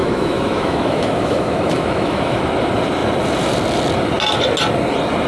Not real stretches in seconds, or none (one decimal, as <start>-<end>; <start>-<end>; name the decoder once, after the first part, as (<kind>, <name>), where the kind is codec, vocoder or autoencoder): 0.0-2.4 (autoencoder, DAC-VAE)

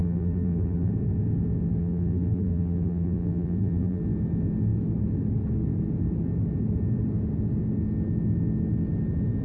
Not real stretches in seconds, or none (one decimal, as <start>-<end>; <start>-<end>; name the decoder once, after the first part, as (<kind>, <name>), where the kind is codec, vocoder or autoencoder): 0.0-0.9 (vocoder, BigVGAN v2); 1.8-4.0

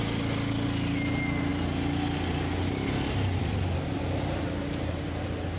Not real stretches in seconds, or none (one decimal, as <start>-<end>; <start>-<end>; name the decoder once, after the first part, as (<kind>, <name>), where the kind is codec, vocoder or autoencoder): none

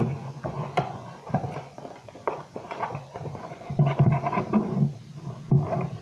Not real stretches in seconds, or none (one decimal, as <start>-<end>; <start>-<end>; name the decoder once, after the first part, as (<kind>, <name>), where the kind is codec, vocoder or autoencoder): 0.0-4.4 (vocoder, Vocos)

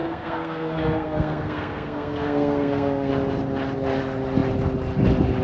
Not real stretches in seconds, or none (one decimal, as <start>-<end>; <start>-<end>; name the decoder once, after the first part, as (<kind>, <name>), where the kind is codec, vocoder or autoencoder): 0.0-3.1 (codec, SNAC)

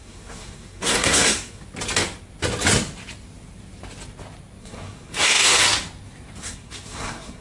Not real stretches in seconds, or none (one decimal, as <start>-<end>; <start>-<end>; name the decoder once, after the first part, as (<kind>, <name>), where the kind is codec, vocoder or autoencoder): 0.0-1.6 (codec, SNAC); 4.6-5.6; 6.4-7.4

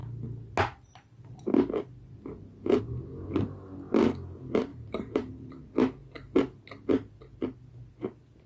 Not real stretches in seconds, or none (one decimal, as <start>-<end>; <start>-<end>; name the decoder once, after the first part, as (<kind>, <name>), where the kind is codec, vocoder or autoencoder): 4.7-5.6 (vocoder, BigVGAN v2)

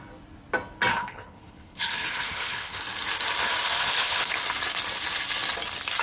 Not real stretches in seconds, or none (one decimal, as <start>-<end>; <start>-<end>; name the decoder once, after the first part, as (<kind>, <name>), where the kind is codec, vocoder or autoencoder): 0.9-2.8 (codec, HILCodec); 3.8-4.3